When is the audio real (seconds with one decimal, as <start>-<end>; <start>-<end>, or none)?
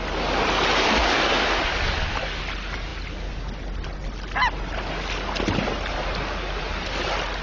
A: 0.0-7.4